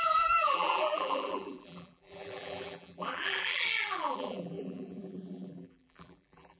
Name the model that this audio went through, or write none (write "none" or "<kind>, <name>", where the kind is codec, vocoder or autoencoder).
vocoder, BigVGAN v2